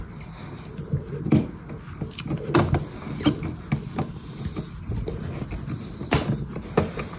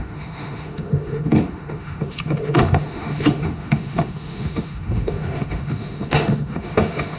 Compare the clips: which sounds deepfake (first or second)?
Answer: second